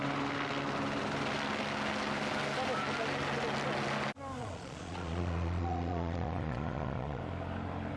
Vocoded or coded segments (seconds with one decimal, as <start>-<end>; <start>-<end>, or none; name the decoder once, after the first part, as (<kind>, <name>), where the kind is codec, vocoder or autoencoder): 4.4-7.2 (vocoder, Vocos)